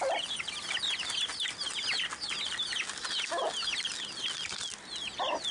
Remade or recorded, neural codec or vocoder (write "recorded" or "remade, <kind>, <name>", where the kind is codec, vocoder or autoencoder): recorded